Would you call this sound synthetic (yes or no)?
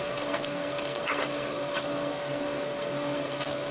yes